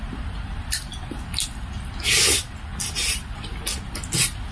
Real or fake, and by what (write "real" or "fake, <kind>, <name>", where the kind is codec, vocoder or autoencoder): real